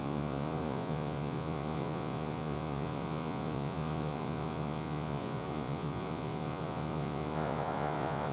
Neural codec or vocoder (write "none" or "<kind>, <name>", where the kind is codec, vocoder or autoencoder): vocoder, Vocos